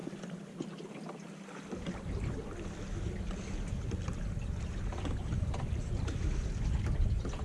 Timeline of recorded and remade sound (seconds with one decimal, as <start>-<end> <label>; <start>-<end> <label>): 0.0-7.4 recorded